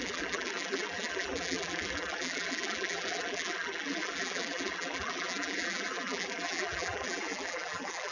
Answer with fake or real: fake